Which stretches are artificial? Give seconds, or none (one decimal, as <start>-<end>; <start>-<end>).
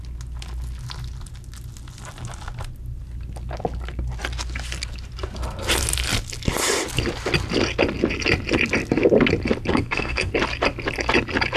9.7-10.3